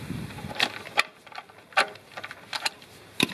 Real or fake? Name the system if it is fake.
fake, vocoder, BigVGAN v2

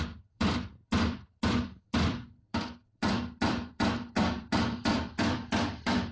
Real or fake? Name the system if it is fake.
fake, vocoder, BigVGAN v2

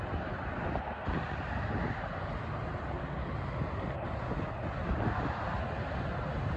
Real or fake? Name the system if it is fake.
real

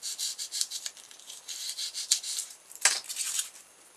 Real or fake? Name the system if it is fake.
fake, vocoder, BigVGAN v2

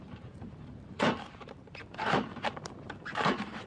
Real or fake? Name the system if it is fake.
fake, vocoder, BigVGAN v2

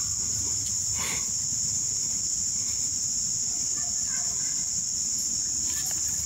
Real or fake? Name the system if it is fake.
real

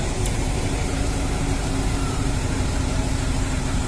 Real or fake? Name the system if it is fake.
fake, vocoder, BigVGAN v2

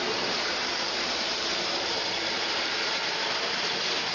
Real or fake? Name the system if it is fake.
fake, vocoder, BigVGAN v2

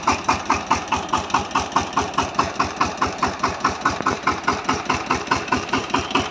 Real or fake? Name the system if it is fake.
fake, vocoder, BigVGAN v2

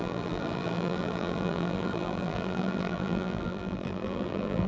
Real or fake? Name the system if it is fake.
fake, vocoder, BigVGAN v2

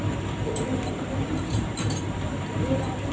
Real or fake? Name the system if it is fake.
fake, vocoder, BigVGAN v2